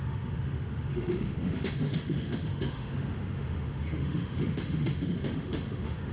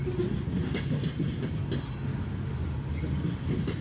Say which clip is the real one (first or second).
second